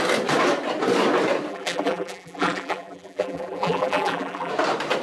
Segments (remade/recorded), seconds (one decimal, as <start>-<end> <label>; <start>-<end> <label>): 0.0-1.5 recorded; 1.5-4.5 remade; 4.5-5.0 recorded